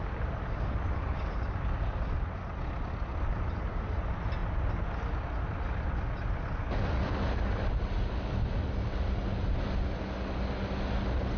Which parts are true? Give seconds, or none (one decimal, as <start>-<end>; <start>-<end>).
0.0-11.4